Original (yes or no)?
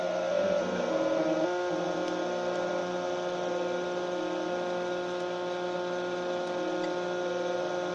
yes